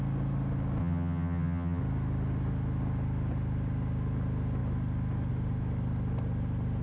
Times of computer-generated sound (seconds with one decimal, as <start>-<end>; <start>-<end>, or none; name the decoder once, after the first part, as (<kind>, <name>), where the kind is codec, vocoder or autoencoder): 0.8-1.8 (vocoder, HiFi-GAN)

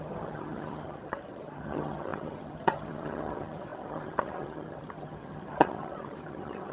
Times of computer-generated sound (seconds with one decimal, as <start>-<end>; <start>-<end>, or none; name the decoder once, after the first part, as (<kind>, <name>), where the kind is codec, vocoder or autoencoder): 0.0-6.7 (vocoder, HiFi-GAN)